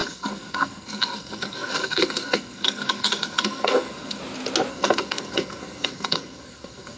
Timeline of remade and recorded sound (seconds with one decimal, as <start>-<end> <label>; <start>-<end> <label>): 0.0-4.2 remade; 4.2-4.7 recorded; 4.7-7.0 remade